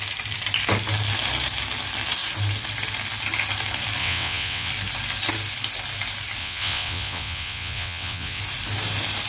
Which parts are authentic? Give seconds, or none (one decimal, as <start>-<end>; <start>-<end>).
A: 0.0-4.0; 4.7-6.4; 8.4-9.3